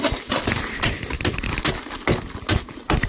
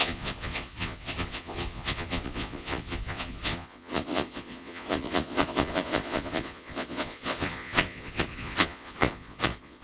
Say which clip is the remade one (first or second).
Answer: second